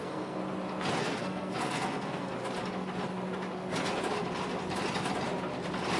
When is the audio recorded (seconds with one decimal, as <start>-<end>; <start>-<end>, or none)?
0.4-1.0; 2.3-6.0

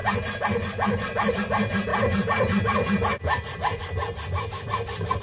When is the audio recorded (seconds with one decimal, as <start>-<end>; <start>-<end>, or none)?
0.0-5.2

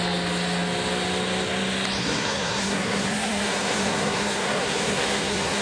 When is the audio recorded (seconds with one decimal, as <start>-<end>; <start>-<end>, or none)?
0.0-2.0

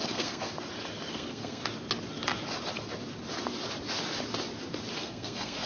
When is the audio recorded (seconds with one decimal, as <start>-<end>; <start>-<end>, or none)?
0.5-1.1; 1.6-5.0

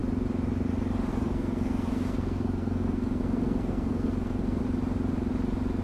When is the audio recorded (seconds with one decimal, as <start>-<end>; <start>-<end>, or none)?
0.0-1.1; 4.6-5.8

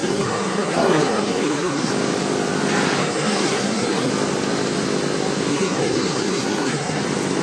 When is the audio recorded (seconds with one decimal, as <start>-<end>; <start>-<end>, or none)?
1.9-3.0; 4.1-5.5; 7.0-7.4

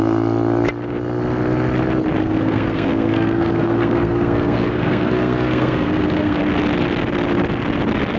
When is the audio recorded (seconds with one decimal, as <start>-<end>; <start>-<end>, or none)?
0.0-2.2; 6.4-8.2

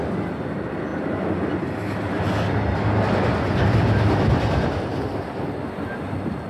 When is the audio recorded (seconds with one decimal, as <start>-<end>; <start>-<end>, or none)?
0.0-6.5